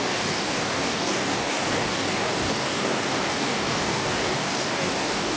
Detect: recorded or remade remade